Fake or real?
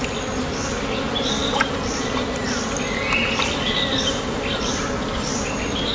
real